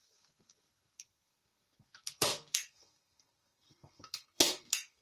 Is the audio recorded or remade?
remade